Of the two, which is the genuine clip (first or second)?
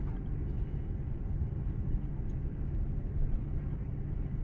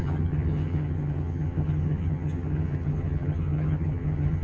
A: first